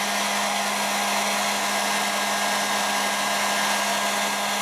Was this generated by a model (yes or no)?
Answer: no